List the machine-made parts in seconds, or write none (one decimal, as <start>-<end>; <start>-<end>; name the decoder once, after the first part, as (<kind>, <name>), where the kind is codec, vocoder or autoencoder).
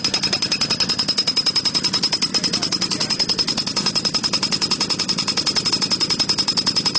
none